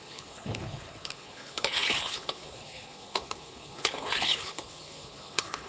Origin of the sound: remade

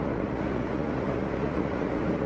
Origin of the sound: remade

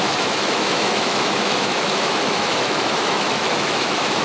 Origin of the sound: remade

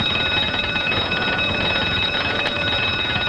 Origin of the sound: remade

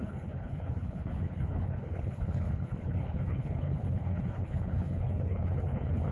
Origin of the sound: remade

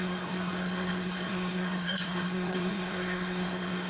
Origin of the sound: remade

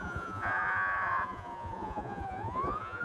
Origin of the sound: remade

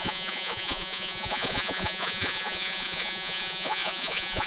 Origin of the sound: remade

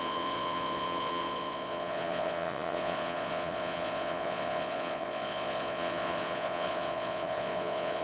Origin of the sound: remade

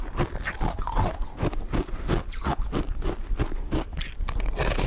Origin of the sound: recorded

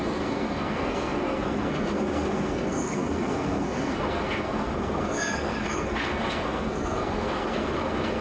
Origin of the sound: remade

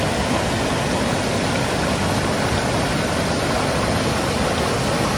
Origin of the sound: recorded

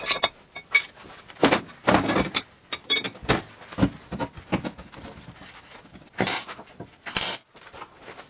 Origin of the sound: recorded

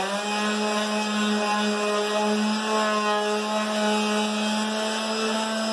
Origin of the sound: recorded